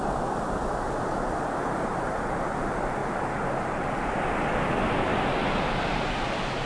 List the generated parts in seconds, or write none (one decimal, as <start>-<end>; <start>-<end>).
none

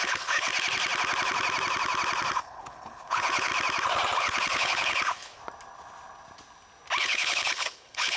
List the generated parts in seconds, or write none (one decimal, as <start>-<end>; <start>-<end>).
0.0-0.5; 2.4-3.5; 4.2-5.4; 7.0-8.2

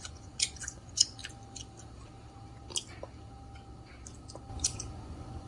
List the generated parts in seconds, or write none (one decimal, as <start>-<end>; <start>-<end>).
0.0-1.2; 4.5-5.5

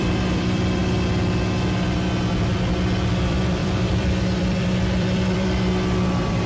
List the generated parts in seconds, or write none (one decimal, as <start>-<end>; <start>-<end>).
0.0-0.8; 3.1-6.5

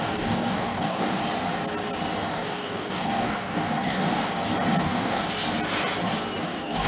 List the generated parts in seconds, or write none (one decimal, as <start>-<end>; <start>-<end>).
0.0-1.2; 2.3-4.3; 4.8-5.2; 6.4-6.9